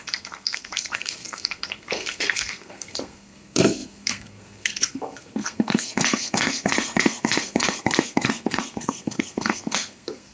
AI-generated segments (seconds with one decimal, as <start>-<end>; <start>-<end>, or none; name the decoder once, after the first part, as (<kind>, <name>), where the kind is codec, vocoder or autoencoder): 0.0-10.3 (codec, SNAC)